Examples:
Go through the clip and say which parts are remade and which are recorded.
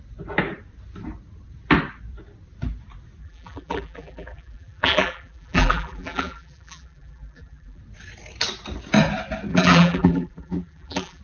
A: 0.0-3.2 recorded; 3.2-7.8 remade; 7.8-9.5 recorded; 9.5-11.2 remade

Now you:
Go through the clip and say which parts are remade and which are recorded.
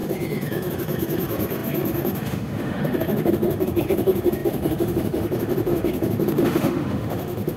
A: 0.0-7.6 remade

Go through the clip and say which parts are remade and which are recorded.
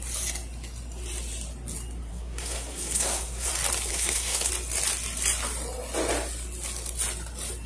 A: 0.0-2.1 recorded; 2.1-3.5 remade; 3.5-3.9 recorded; 3.9-4.5 remade; 4.5-7.7 recorded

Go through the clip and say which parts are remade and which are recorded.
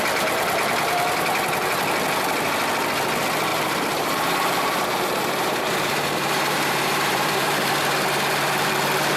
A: 0.0-3.5 recorded; 3.5-7.7 remade; 7.7-9.2 recorded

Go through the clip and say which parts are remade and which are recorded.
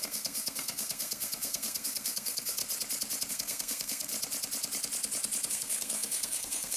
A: 0.0-2.6 remade; 2.6-3.3 recorded; 3.3-4.1 remade; 4.1-5.5 recorded; 5.5-6.8 remade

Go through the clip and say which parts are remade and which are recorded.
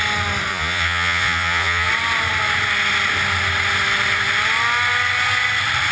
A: 0.0-0.5 recorded; 0.5-1.9 remade; 1.9-5.9 recorded